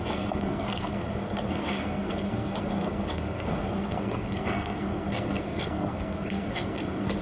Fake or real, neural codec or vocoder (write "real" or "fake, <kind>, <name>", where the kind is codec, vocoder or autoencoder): fake, codec, SNAC